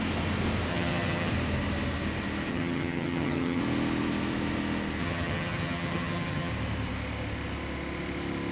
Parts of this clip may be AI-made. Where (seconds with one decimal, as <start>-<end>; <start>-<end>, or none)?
0.7-1.3; 2.5-3.6; 5.0-6.5